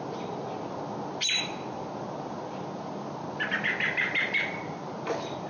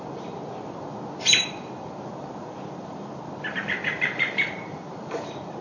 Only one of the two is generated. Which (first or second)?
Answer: second